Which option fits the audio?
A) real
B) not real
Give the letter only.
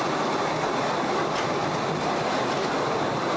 A